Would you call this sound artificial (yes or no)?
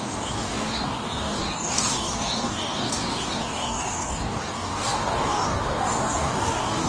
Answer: yes